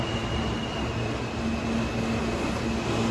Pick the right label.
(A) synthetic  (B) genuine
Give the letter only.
B